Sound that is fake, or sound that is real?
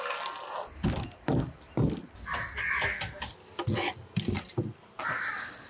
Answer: real